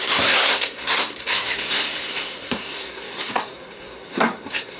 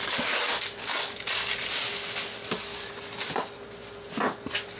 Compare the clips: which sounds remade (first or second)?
first